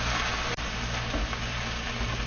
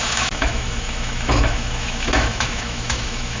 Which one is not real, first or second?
second